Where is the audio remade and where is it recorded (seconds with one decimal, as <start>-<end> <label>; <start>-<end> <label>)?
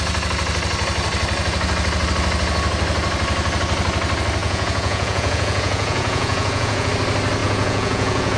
0.0-4.4 recorded; 4.4-6.9 remade; 6.9-7.4 recorded; 7.4-8.4 remade